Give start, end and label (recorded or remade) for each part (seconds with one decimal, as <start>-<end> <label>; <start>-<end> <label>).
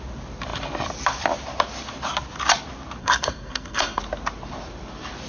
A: 0.0-3.0 recorded; 3.0-4.0 remade; 4.0-5.3 recorded